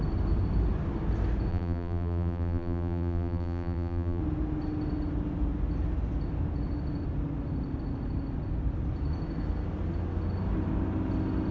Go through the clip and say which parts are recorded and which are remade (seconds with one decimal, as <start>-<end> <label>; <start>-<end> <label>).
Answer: 0.0-1.5 recorded; 1.5-4.2 remade; 4.2-11.5 recorded